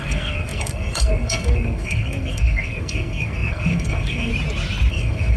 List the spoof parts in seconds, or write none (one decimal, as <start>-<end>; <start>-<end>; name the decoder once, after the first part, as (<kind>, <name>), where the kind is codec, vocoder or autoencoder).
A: 0.0-4.3 (codec, SNAC); 4.9-5.4